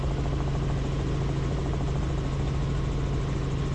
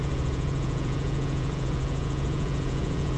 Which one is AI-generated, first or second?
second